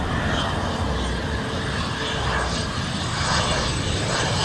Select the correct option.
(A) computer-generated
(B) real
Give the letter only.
B